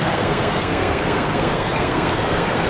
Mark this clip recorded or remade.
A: remade